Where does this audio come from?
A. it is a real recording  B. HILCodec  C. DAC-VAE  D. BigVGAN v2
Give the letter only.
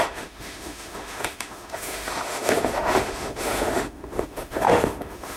C